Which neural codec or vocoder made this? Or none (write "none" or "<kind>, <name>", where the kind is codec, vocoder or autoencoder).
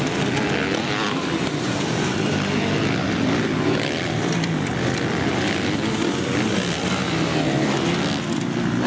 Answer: none